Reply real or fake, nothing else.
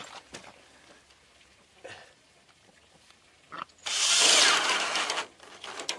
real